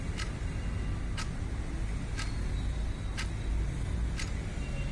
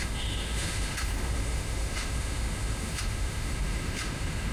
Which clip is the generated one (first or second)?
second